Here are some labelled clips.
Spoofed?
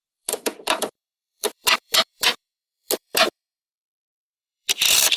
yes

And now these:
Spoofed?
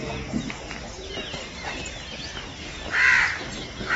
no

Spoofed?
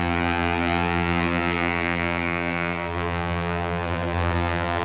yes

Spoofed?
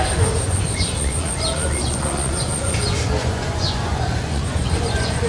yes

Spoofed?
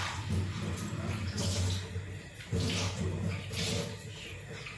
no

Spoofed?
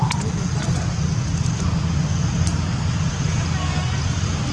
no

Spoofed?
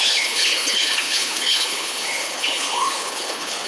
yes